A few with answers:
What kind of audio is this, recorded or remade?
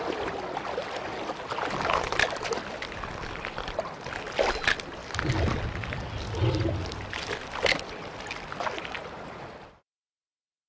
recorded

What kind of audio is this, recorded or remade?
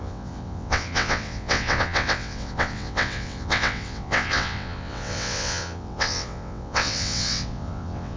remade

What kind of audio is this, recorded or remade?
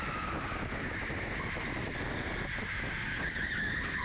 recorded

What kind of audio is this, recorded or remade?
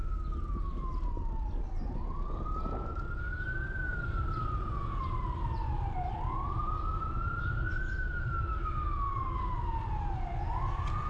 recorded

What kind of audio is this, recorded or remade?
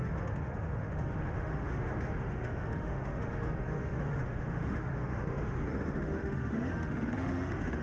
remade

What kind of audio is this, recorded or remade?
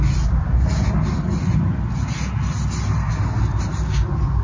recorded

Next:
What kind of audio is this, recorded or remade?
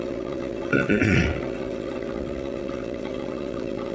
remade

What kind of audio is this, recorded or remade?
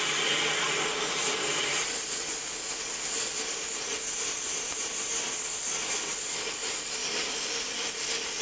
recorded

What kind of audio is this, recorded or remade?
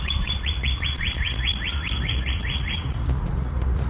remade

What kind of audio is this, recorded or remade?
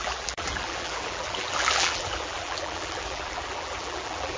remade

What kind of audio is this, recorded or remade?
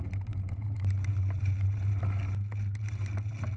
recorded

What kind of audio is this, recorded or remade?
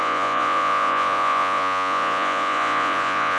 remade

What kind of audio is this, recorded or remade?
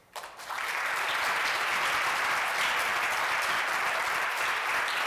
recorded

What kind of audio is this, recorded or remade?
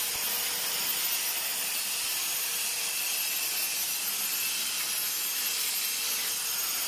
recorded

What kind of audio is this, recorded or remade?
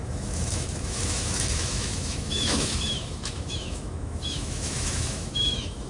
remade